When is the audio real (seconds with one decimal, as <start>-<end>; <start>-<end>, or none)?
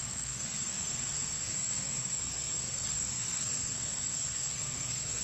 none